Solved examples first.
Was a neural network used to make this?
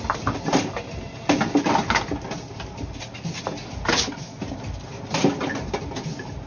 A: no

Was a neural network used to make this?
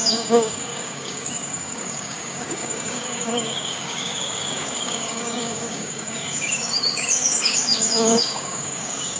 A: yes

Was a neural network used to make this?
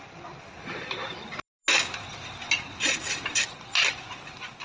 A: no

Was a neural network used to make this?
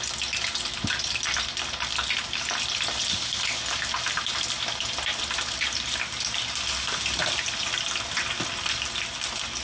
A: no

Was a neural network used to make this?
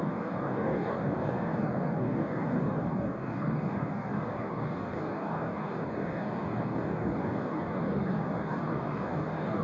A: yes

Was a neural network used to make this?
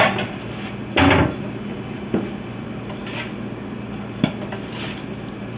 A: no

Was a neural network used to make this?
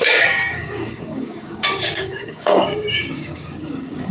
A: yes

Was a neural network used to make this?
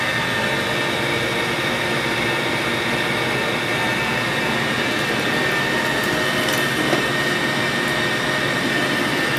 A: no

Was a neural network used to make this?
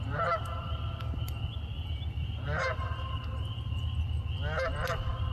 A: no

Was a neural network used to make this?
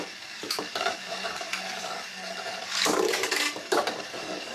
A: yes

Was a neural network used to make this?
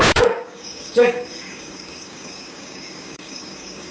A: yes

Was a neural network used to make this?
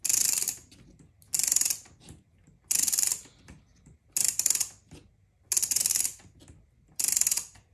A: no